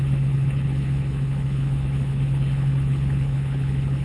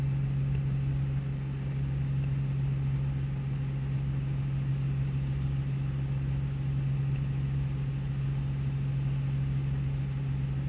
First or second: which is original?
second